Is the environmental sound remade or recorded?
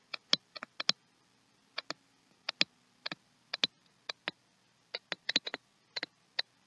recorded